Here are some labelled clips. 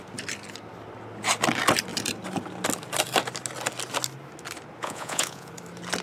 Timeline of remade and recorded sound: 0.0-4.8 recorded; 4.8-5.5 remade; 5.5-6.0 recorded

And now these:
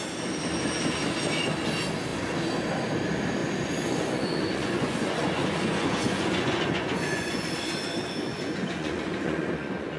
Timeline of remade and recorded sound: 0.0-3.4 recorded; 3.4-7.5 remade; 7.5-8.3 recorded; 8.3-10.0 remade

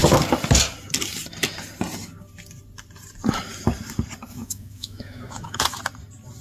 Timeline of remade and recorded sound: 0.0-4.3 recorded; 4.3-5.6 remade; 5.6-6.4 recorded

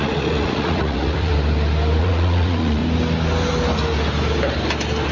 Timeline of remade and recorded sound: 0.0-1.3 remade; 1.3-2.0 recorded; 2.0-2.8 remade; 2.8-5.1 recorded

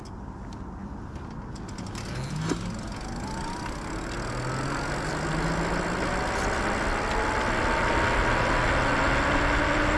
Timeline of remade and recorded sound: 0.0-10.0 recorded

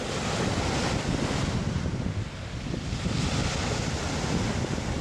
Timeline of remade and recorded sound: 0.0-5.0 recorded

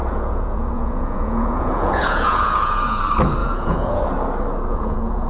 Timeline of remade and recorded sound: 0.0-3.0 remade; 3.0-3.4 recorded; 3.4-4.0 remade; 4.0-4.7 recorded; 4.7-5.3 remade

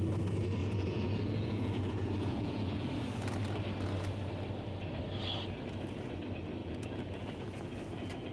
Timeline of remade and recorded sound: 0.0-0.6 recorded; 0.6-2.9 remade; 2.9-6.6 recorded; 6.6-7.6 remade; 7.6-8.3 recorded